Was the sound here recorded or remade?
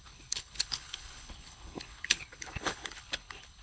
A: remade